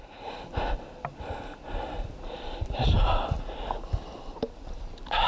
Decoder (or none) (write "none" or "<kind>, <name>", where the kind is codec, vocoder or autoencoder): none